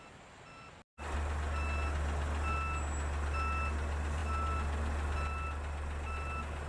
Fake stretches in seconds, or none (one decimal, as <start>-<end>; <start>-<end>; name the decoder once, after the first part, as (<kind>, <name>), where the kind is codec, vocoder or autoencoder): none